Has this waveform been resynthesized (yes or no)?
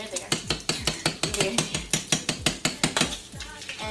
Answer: no